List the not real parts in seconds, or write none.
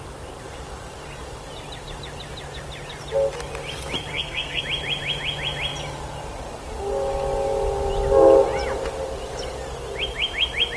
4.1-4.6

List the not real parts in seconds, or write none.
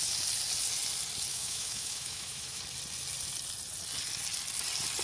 1.3-2.6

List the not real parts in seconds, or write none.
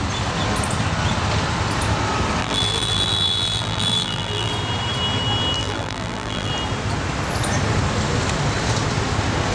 2.4-4.5; 5.6-6.5